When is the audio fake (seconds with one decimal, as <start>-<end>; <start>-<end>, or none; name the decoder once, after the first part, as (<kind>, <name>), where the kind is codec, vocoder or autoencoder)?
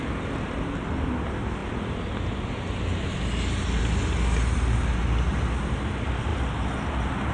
none